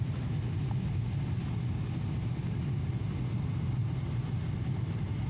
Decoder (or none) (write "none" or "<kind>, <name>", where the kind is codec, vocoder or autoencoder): none